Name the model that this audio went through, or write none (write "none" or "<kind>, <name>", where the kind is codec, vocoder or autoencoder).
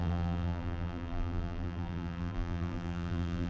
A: vocoder, BigVGAN v2